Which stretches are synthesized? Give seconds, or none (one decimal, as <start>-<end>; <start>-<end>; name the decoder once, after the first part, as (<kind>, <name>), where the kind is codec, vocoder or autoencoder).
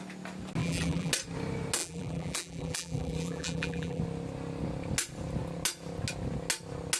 0.6-1.1 (vocoder, BigVGAN v2); 1.8-4.0